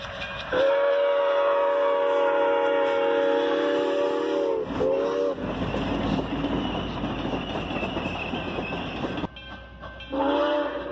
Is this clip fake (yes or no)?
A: no